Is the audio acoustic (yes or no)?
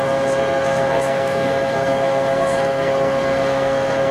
no